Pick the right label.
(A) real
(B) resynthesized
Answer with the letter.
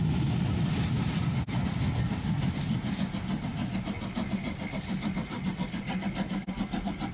A